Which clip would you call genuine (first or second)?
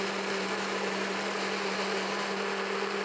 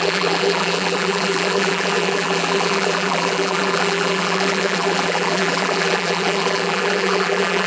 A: first